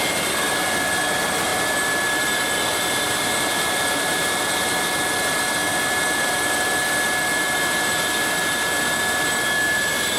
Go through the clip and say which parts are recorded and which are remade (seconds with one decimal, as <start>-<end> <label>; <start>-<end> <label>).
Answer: 0.0-1.5 recorded; 1.5-4.4 remade; 4.4-5.7 recorded; 5.7-8.3 remade; 8.3-10.2 recorded